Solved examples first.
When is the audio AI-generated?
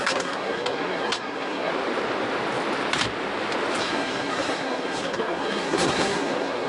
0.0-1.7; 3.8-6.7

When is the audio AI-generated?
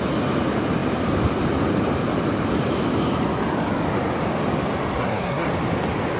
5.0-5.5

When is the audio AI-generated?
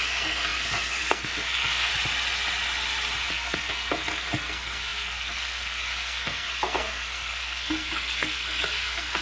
0.0-1.9; 3.3-9.2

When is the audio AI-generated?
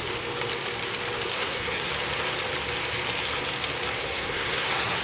1.3-1.9; 4.0-5.0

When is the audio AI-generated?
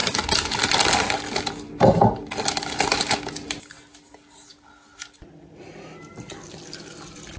none